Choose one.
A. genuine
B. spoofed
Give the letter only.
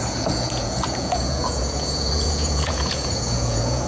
B